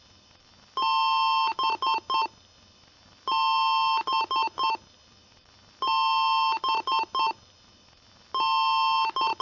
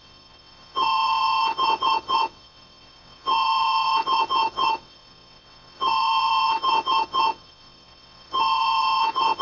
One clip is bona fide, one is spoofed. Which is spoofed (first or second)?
second